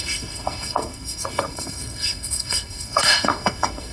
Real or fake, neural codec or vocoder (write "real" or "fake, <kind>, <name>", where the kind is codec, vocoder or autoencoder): fake, codec, SNAC